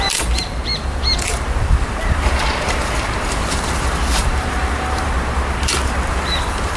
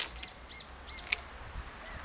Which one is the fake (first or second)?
first